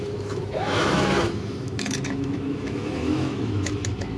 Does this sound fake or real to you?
fake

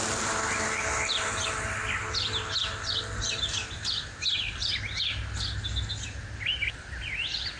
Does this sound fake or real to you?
real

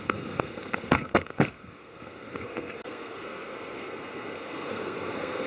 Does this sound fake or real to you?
fake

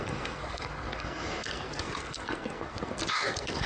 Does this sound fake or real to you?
fake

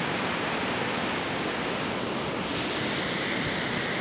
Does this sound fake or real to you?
real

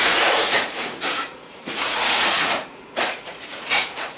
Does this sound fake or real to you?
fake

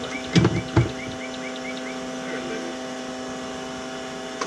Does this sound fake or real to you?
real